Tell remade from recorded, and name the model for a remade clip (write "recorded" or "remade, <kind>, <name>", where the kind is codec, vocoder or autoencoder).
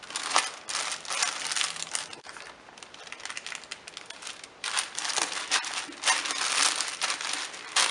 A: recorded